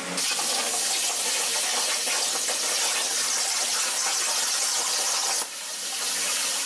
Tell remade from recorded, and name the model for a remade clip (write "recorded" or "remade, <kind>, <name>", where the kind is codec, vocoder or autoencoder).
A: recorded